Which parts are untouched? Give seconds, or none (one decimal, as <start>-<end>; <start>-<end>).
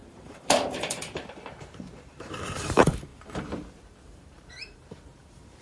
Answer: none